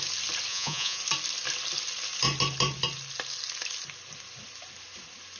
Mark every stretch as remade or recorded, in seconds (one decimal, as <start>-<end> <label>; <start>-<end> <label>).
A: 0.0-0.5 recorded; 0.5-1.0 remade; 1.0-5.4 recorded